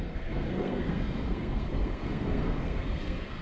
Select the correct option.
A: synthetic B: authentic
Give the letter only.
A